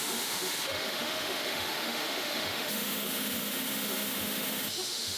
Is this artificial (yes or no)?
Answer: yes